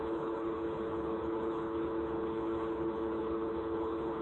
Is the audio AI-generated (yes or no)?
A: yes